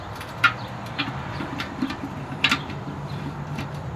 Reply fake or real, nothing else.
fake